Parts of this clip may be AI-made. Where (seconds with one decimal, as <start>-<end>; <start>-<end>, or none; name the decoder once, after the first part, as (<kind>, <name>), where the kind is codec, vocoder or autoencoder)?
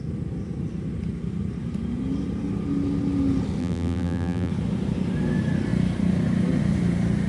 3.6-4.5 (vocoder, BigVGAN v2)